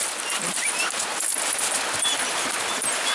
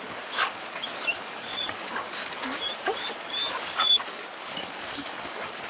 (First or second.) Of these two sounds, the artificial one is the second